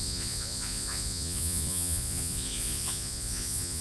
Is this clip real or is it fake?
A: fake